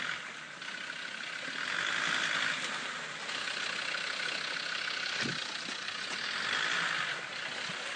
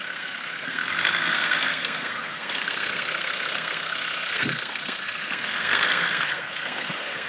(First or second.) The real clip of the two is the first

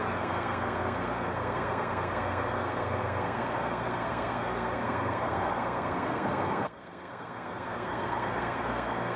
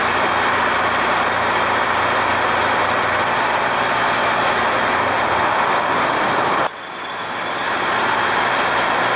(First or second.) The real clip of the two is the second